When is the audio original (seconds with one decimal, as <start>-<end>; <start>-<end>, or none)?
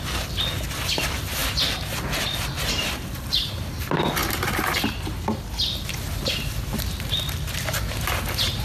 0.0-1.4; 3.5-8.6